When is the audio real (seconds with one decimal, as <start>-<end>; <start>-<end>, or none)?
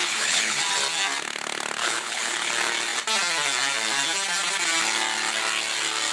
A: 0.6-1.8; 2.5-6.1